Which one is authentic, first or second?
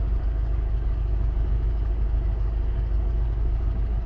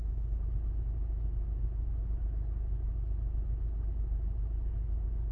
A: second